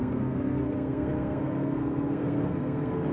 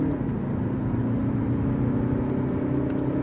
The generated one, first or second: first